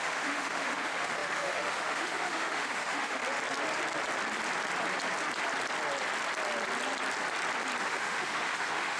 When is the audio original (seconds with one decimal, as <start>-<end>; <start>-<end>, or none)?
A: 3.2-7.8